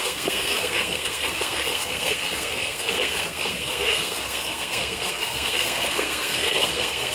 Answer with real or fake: fake